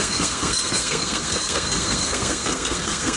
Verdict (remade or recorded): remade